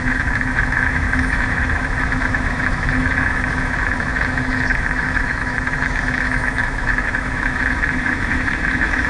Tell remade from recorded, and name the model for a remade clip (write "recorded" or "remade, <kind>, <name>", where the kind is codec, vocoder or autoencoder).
remade, autoencoder, DAC-VAE